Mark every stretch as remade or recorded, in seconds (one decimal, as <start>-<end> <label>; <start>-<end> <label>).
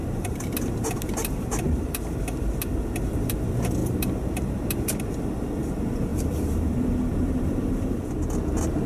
0.0-0.5 remade; 0.5-6.1 recorded; 6.1-8.0 remade; 8.0-8.9 recorded